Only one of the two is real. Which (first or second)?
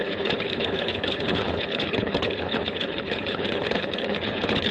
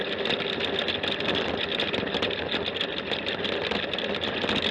second